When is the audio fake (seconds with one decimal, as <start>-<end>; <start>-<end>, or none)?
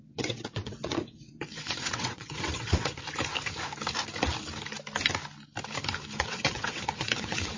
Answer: 0.0-2.9; 6.2-7.6